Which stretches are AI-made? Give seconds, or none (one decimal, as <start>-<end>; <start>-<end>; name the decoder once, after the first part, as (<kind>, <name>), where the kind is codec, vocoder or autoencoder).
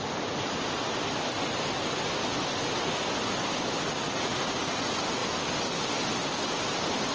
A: none